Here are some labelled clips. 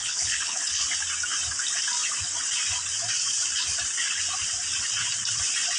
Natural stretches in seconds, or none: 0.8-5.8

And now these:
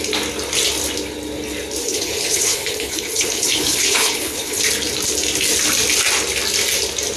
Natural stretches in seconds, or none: 0.0-1.8; 4.6-7.2

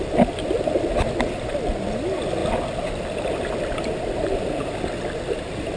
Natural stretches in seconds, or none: 0.0-5.8

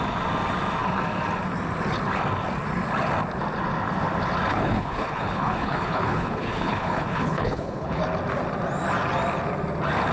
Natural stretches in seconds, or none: 0.0-4.5; 8.0-10.1

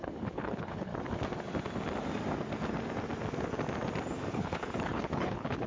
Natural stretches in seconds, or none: 0.9-4.3

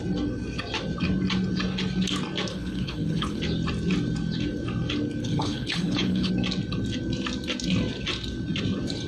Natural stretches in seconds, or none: 0.0-2.5; 3.4-5.2; 6.3-9.1

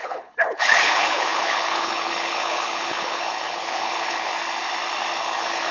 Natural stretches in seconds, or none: 4.3-5.2

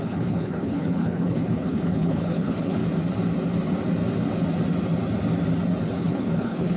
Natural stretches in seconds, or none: 2.8-6.0